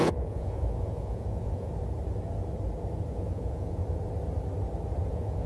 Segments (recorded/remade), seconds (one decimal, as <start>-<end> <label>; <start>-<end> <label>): 0.0-1.7 remade; 1.7-3.1 recorded; 3.1-3.8 remade; 3.8-5.1 recorded; 5.1-5.5 remade